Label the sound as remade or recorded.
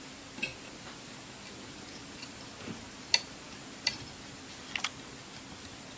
recorded